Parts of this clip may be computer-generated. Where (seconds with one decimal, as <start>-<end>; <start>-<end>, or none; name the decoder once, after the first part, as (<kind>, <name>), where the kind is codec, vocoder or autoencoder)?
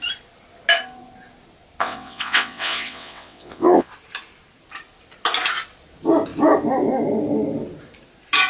1.8-3.9 (vocoder, WaveNeXt)